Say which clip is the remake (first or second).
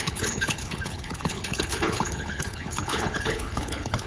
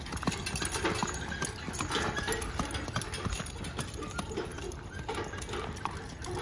first